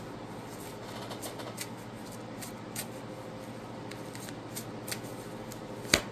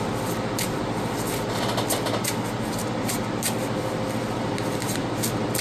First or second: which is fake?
second